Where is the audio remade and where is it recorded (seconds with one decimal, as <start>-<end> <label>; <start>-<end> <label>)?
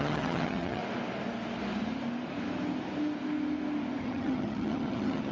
0.0-0.8 remade; 0.8-4.0 recorded; 4.0-5.3 remade